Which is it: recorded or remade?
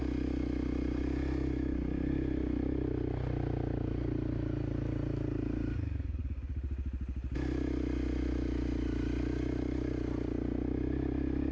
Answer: recorded